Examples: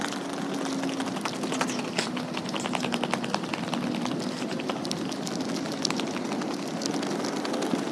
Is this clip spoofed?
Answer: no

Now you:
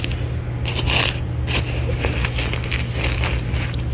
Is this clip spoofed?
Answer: no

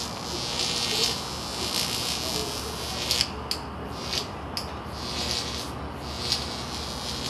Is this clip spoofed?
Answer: no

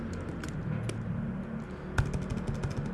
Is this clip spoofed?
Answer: no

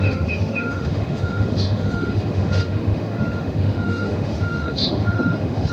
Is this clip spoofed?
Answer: yes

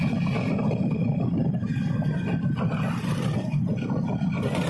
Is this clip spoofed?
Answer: no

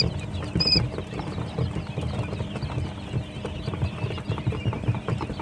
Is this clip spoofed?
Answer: no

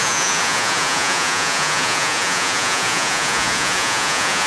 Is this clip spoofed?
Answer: yes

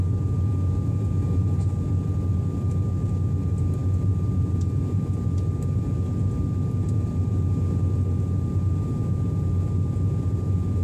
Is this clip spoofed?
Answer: no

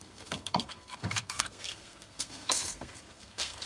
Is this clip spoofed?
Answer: yes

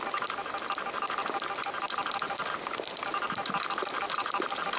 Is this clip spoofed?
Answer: no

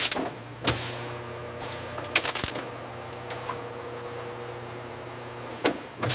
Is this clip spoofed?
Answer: no